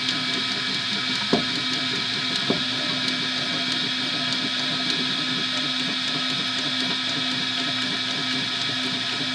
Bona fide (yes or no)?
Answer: yes